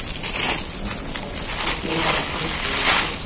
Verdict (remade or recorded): recorded